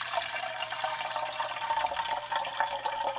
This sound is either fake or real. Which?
real